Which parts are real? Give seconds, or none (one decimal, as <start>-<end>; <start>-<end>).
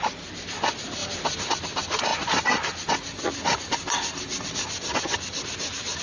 0.0-6.0